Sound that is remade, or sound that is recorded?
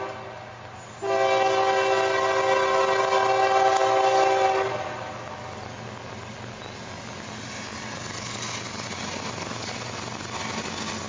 recorded